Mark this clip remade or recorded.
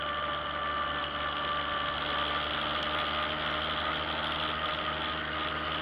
recorded